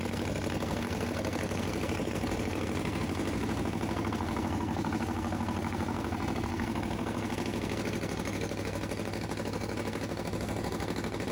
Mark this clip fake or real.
fake